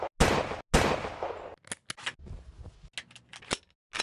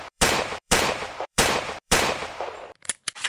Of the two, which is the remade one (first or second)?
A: second